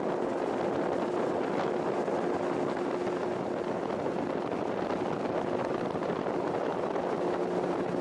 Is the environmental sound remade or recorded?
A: recorded